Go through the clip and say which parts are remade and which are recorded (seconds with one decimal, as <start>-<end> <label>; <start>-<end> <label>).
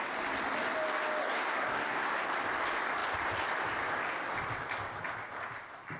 0.0-1.2 recorded; 1.2-2.1 remade; 2.1-6.0 recorded